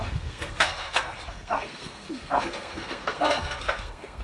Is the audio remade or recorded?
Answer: remade